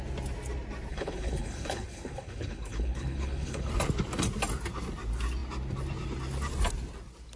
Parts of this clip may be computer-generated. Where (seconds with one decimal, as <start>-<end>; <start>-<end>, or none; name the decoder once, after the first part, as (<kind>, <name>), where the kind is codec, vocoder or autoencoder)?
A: 0.9-3.7 (codec, HILCodec)